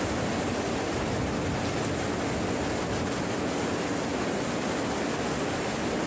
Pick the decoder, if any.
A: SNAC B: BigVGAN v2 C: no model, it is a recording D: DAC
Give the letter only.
C